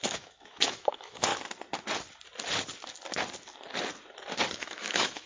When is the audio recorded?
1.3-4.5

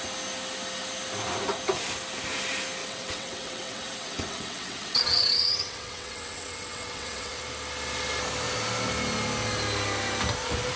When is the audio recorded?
0.0-2.8; 7.4-10.8